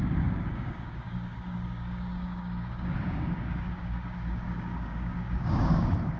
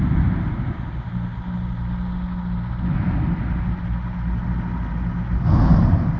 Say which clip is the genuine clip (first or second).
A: second